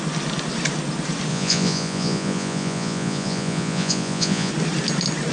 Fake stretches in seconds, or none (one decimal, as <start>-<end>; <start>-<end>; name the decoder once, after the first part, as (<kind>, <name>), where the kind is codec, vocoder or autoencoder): 1.3-4.5 (vocoder, Vocos)